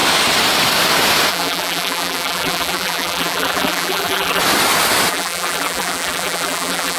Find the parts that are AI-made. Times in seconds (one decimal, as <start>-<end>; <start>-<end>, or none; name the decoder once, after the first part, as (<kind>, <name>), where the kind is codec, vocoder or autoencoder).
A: 1.3-4.4 (vocoder, BigVGAN v2); 5.1-7.0